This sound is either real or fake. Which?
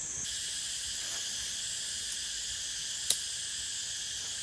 real